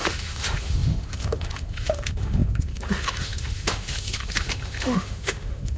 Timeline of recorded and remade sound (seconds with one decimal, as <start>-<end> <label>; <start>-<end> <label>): 0.0-5.8 remade